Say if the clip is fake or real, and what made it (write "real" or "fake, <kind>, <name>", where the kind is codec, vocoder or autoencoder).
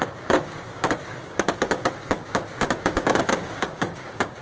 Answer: fake, codec, DAC